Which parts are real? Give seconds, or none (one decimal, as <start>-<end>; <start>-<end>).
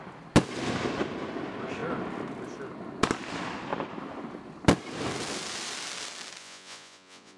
0.0-6.4